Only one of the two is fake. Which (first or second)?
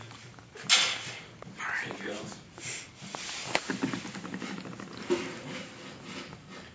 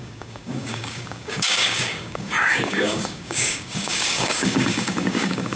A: second